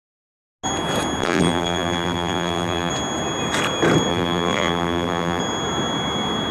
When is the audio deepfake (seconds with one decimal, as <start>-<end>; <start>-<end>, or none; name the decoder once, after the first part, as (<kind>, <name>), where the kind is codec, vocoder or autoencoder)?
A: 1.2-2.9 (vocoder, BigVGAN v2); 4.1-5.4